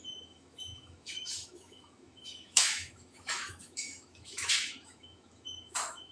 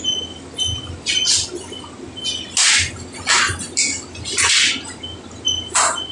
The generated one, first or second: first